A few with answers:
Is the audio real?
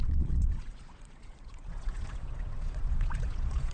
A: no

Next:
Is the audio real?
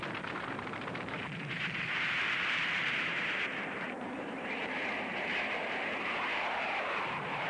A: no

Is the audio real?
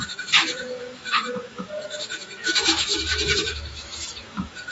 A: no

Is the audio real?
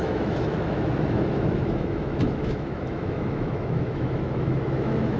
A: no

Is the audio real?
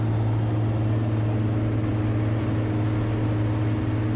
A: yes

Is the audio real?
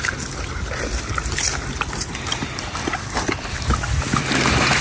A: yes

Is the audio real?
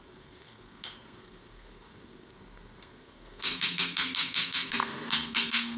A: no